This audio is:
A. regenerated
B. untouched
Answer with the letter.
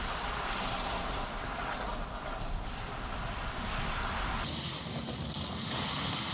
B